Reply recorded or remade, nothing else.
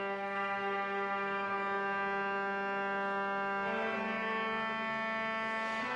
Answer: recorded